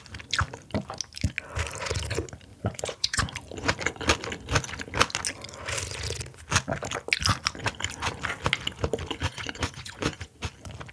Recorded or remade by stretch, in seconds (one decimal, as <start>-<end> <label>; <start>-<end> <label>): 0.0-2.5 recorded; 2.5-3.2 remade; 3.2-9.3 recorded; 9.3-10.3 remade; 10.3-10.9 recorded

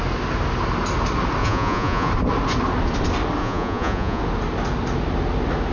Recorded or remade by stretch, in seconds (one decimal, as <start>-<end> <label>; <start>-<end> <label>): 0.0-1.4 recorded; 1.4-2.1 remade; 2.1-3.4 recorded; 3.4-4.2 remade; 4.2-5.7 recorded

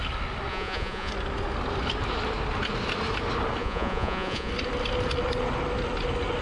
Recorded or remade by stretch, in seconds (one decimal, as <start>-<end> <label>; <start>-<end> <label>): 0.0-0.5 recorded; 0.5-1.1 remade; 1.1-3.6 recorded; 3.6-4.5 remade; 4.5-6.4 recorded

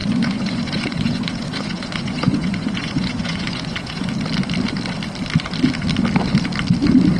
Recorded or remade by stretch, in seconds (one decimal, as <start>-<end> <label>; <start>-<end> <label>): 0.0-4.1 remade; 4.1-7.2 recorded

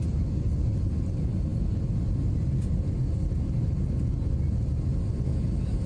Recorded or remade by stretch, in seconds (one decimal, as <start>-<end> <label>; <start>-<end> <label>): 0.0-5.9 recorded

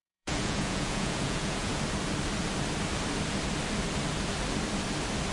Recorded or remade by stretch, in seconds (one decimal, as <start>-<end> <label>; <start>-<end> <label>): 0.0-1.8 remade; 1.8-5.3 recorded